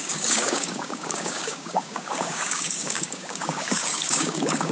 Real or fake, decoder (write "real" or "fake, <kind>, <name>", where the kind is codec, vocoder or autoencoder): fake, codec, DAC